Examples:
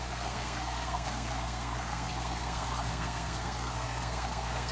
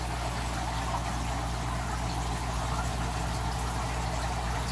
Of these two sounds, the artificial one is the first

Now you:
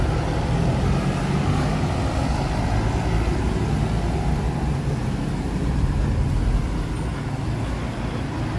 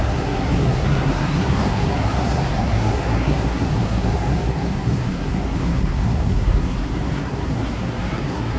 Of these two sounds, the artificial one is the second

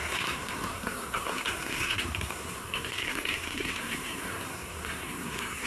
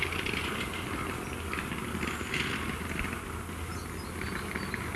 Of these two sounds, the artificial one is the first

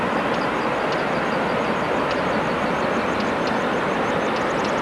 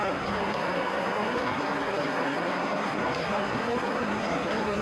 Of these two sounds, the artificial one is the second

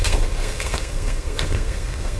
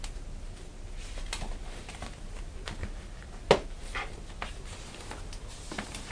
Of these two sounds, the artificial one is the first